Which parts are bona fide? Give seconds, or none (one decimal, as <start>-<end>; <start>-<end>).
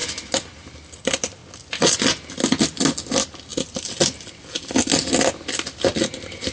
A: 0.0-6.5